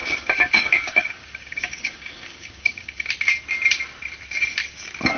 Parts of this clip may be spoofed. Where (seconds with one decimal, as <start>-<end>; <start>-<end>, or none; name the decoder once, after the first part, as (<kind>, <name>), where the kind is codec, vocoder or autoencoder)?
0.0-3.1 (codec, DAC)